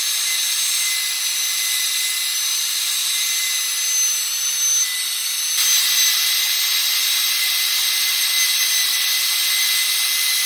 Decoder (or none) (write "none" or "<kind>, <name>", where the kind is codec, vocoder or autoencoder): none